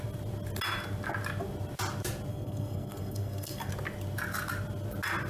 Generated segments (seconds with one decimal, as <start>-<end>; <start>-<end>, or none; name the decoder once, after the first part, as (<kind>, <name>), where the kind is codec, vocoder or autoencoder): 2.3-3.7 (codec, SNAC)